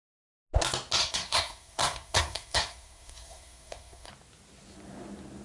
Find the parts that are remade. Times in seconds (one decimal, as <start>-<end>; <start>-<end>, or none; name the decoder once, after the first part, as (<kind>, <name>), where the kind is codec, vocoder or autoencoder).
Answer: 1.0-4.1 (codec, SNAC)